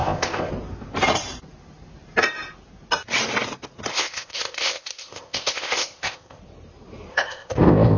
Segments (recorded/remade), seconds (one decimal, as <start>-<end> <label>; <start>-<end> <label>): 0.0-0.5 remade; 0.5-3.9 recorded; 3.9-6.4 remade; 6.4-7.1 recorded; 7.1-8.0 remade